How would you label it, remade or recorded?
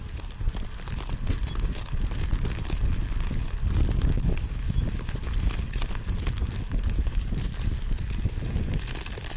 recorded